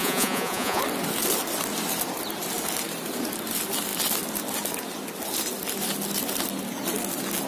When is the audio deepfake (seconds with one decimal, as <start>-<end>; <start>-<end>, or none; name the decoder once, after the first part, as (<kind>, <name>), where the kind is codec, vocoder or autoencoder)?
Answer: 0.0-0.8 (vocoder, Vocos)